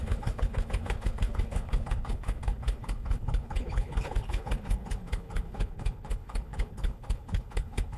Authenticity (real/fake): fake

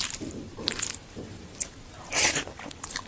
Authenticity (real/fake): fake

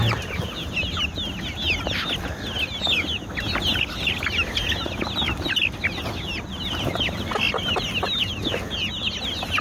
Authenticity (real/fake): real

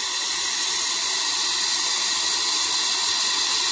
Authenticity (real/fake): real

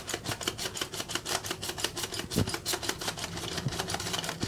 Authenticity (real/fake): real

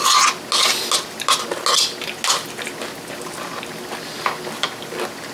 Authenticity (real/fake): real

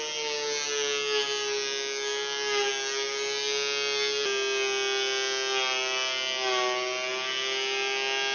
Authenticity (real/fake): real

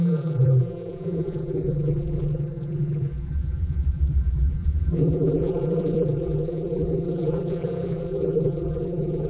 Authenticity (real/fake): fake